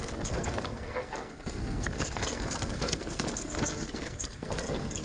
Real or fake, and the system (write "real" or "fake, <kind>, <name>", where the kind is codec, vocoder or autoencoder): fake, codec, SNAC